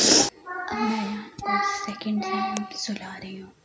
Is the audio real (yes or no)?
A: yes